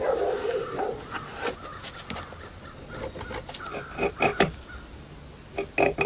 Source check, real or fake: real